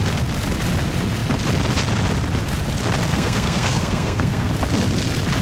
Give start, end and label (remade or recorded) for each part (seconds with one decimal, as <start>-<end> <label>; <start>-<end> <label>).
0.0-3.1 recorded; 3.1-4.5 remade; 4.5-5.4 recorded